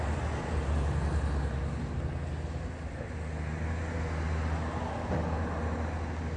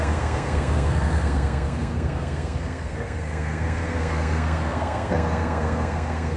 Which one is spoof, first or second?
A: second